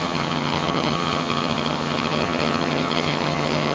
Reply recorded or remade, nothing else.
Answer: remade